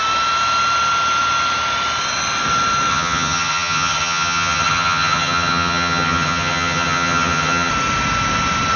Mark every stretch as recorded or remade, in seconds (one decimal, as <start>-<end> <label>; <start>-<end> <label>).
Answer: 0.0-2.9 recorded; 2.9-7.7 remade; 7.7-8.8 recorded